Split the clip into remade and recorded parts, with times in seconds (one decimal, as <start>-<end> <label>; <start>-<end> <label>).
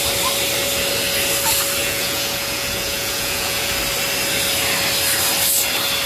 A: 0.0-1.8 recorded; 1.8-3.7 remade; 3.7-6.1 recorded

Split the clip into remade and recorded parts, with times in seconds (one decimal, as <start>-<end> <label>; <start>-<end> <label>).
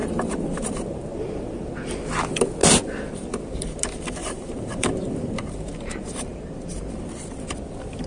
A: 0.0-1.2 remade; 1.2-4.2 recorded; 4.2-6.9 remade; 6.9-8.1 recorded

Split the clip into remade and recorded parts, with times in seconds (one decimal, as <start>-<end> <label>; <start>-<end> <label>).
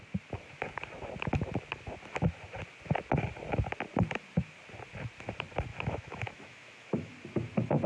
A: 0.0-5.7 recorded; 5.7-7.1 remade; 7.1-7.9 recorded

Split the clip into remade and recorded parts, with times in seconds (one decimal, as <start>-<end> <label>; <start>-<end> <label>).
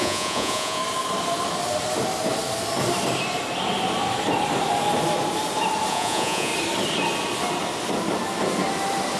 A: 0.0-0.8 remade; 0.8-5.9 recorded; 5.9-6.5 remade; 6.5-9.2 recorded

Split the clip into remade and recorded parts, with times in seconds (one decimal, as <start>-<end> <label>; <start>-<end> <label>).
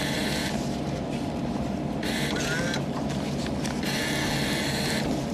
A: 0.0-0.4 recorded; 0.4-1.5 remade; 1.5-5.3 recorded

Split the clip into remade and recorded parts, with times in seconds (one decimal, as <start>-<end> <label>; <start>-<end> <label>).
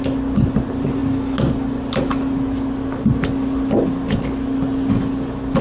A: 0.0-5.6 recorded